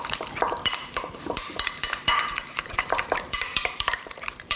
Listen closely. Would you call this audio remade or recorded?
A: remade